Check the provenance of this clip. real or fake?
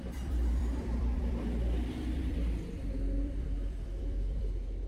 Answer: fake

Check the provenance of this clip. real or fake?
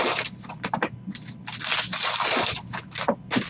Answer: real